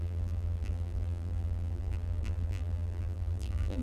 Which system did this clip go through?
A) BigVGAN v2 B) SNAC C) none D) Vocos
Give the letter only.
A